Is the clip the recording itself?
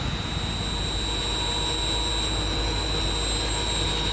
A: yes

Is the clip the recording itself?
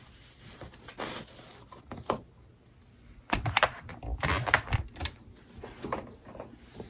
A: yes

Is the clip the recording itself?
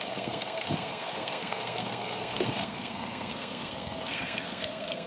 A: no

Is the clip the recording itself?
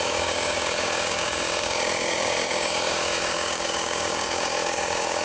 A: no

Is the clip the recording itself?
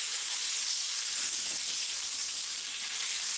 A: no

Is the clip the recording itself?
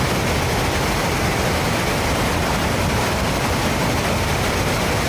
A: yes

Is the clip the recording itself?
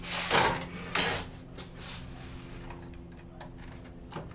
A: yes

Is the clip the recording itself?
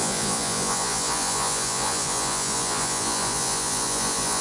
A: no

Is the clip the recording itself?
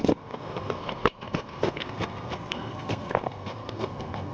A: no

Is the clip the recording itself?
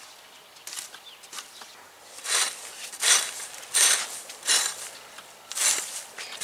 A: yes